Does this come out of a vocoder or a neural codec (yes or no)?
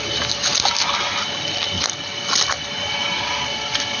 no